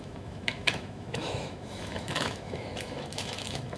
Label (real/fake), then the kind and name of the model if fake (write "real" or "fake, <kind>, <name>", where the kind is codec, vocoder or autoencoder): fake, autoencoder, DAC-VAE